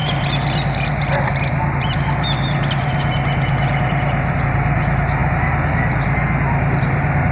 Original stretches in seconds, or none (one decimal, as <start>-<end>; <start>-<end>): 5.2-5.7; 6.2-6.8

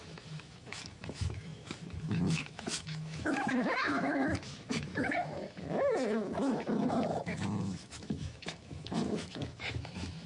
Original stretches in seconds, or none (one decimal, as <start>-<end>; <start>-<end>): none

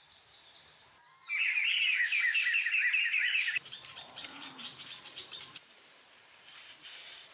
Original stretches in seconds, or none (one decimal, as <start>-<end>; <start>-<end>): 0.9-3.0

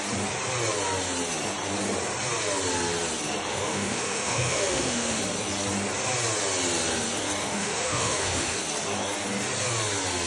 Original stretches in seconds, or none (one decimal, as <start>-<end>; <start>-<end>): 0.0-3.5; 5.2-7.4; 8.6-10.3

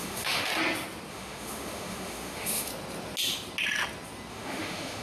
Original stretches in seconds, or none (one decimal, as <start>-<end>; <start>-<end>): 0.5-1.1; 2.7-4.3

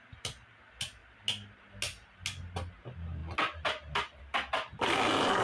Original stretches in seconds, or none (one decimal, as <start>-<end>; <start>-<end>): 0.0-5.4